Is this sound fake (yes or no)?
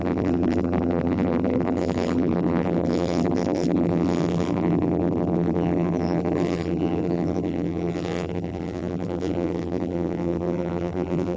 yes